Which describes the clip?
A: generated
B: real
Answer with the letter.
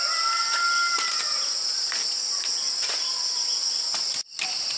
B